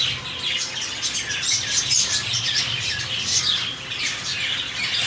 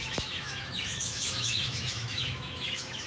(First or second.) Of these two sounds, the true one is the first